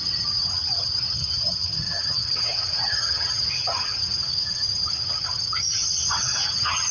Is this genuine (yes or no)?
no